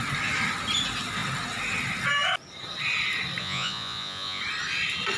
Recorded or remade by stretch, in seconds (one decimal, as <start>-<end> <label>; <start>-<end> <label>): 0.0-3.4 recorded; 3.4-4.4 remade; 4.4-5.2 recorded